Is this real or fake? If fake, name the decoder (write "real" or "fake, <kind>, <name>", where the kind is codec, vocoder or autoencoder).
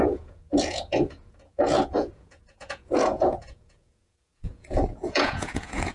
fake, vocoder, Vocos